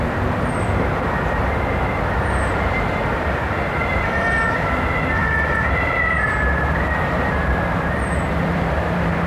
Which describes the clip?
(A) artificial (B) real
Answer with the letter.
A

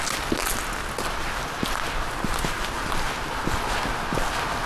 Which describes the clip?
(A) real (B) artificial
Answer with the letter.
A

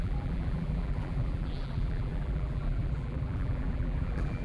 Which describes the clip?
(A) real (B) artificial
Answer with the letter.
B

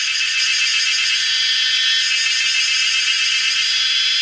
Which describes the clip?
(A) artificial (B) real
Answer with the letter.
B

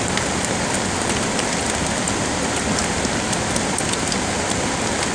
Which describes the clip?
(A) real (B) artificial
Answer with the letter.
A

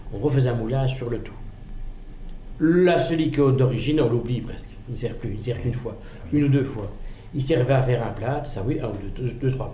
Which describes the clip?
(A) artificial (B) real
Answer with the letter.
B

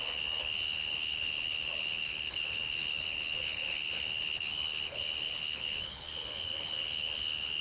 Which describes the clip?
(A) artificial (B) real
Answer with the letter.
A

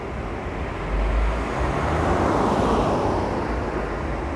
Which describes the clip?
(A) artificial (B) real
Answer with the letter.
B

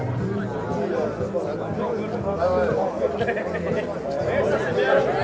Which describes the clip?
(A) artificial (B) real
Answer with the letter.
B